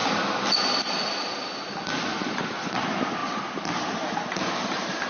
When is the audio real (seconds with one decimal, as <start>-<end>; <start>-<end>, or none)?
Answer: 0.0-2.1; 2.6-3.2